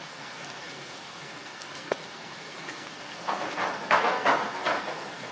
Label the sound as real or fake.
fake